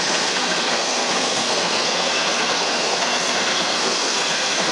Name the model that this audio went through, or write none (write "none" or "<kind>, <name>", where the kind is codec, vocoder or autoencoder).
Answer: codec, SNAC